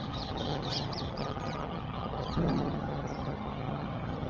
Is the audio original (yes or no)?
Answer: no